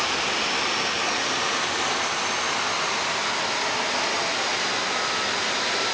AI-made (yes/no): no